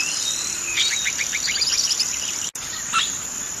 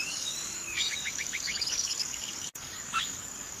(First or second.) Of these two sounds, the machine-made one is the second